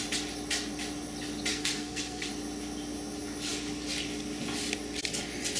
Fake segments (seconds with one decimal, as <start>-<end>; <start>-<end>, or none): 1.5-2.3